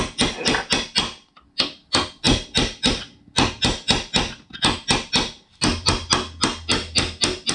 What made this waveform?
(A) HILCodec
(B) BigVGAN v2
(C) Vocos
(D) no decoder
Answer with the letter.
D